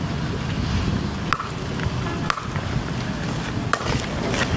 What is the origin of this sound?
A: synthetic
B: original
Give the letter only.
B